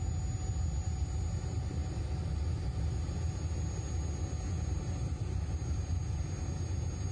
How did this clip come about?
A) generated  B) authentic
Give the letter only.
B